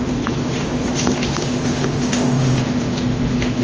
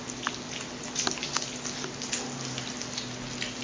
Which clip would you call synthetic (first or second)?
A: first